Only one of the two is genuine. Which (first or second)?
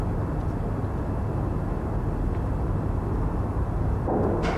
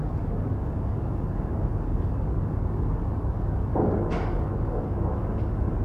first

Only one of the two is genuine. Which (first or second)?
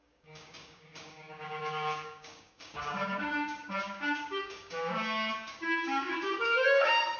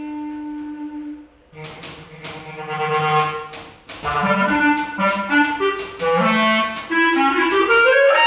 second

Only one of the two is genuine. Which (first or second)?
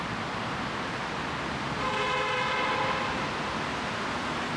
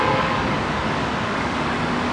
first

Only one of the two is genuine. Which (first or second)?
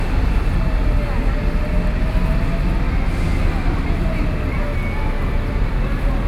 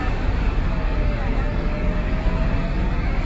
first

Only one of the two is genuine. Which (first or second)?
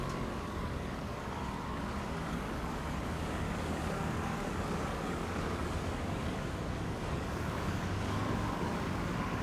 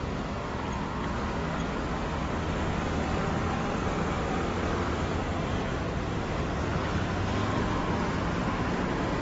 second